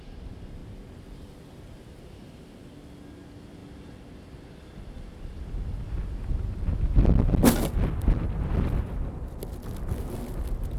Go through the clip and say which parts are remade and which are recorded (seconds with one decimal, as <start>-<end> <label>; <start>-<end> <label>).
0.0-10.8 recorded